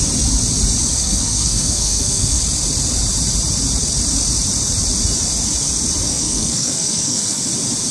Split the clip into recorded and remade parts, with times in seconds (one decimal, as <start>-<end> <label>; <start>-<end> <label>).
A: 0.0-1.0 recorded; 1.0-2.4 remade; 2.4-6.1 recorded; 6.1-7.5 remade; 7.5-7.9 recorded

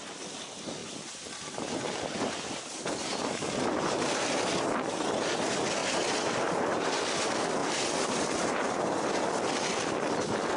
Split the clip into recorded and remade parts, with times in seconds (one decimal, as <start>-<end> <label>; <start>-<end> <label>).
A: 0.0-0.8 recorded; 0.8-4.4 remade; 4.4-5.8 recorded; 5.8-7.0 remade; 7.0-7.6 recorded; 7.6-9.1 remade; 9.1-10.6 recorded

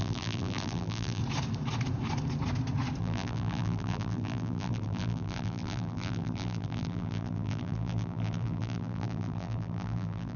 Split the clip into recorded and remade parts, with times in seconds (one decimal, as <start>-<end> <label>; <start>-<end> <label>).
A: 0.0-1.2 remade; 1.2-3.0 recorded; 3.0-10.4 remade

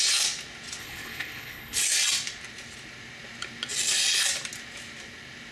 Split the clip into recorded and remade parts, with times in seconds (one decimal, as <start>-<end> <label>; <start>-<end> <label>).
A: 0.0-0.8 recorded; 0.8-1.8 remade; 1.8-5.5 recorded

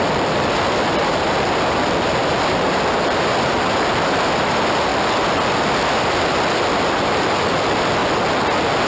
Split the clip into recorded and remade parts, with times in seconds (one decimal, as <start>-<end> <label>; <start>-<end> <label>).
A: 0.0-4.9 remade; 4.9-6.0 recorded; 6.0-8.0 remade; 8.0-8.9 recorded

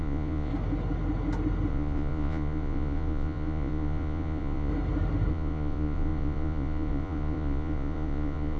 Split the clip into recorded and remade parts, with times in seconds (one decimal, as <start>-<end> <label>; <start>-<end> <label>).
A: 0.0-0.5 remade; 0.5-1.7 recorded; 1.7-4.7 remade; 4.7-5.3 recorded; 5.3-8.6 remade

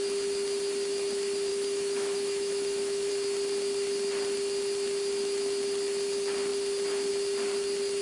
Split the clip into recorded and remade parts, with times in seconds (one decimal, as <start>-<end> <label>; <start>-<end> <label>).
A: 0.0-1.5 recorded; 1.5-3.1 remade; 3.1-8.0 recorded